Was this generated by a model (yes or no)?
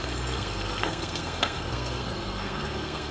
yes